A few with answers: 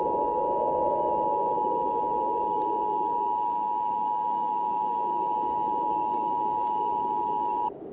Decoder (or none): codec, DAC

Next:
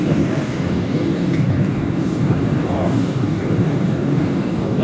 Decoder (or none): codec, DAC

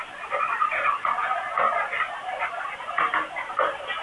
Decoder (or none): none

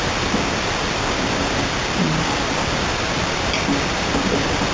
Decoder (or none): none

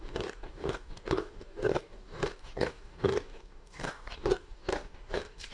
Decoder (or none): codec, DAC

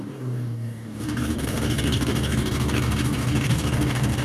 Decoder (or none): codec, DAC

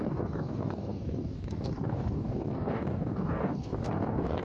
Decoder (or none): codec, DAC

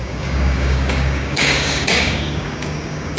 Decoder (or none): codec, DAC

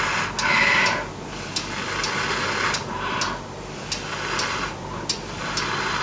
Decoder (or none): none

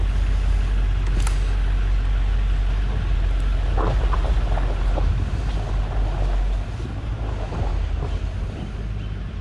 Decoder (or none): none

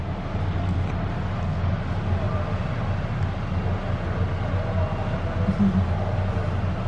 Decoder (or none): none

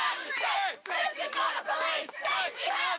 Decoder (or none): codec, DAC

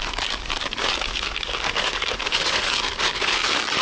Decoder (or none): codec, DAC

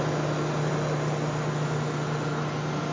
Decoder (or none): none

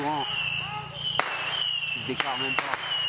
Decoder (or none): none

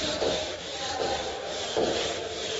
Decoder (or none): none